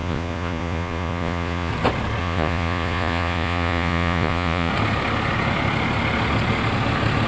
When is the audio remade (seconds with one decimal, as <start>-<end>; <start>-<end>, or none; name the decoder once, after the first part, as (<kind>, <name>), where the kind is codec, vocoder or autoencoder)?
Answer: 0.0-1.7 (vocoder, Vocos); 2.2-4.7